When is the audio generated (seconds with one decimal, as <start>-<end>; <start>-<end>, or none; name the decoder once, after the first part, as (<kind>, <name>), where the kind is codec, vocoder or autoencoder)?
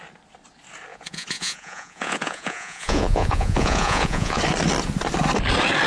0.9-4.4 (vocoder, Vocos)